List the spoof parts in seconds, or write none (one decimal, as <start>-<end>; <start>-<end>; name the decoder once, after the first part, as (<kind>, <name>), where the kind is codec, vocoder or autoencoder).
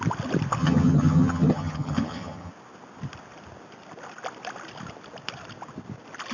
0.6-2.5 (vocoder, HiFi-GAN)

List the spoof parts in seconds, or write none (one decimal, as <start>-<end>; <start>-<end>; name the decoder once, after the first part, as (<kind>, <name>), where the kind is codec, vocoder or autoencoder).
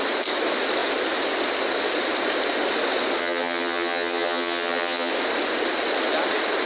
3.2-5.1 (vocoder, HiFi-GAN)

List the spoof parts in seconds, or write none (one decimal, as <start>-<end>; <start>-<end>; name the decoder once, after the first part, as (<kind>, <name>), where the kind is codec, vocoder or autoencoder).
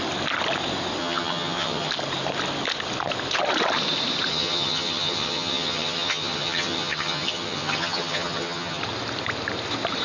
1.0-1.9 (vocoder, HiFi-GAN); 4.3-8.8